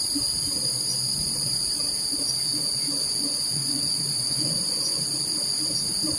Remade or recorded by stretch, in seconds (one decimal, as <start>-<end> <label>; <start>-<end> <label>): 0.0-2.5 recorded; 2.5-5.1 remade; 5.1-6.2 recorded